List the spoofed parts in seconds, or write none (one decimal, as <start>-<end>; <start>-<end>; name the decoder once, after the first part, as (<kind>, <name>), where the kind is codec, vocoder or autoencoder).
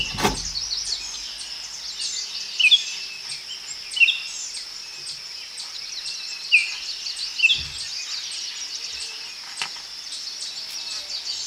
none